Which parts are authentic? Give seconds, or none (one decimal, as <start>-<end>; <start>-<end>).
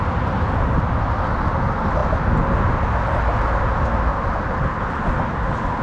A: 0.0-5.8